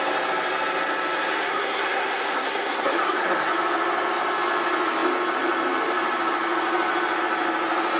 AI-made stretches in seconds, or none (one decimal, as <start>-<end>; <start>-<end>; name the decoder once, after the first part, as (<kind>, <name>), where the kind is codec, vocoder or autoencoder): 1.3-3.5 (codec, SNAC)